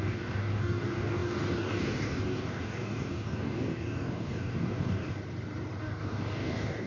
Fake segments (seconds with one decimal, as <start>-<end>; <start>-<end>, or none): 0.0-5.2; 5.8-6.9